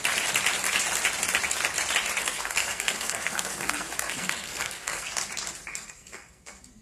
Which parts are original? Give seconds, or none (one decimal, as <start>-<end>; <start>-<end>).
0.0-2.2; 5.2-5.7